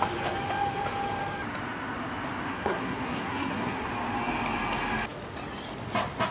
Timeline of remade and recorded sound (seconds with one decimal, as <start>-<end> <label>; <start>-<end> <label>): 0.0-2.5 recorded; 2.5-3.9 remade; 3.9-6.3 recorded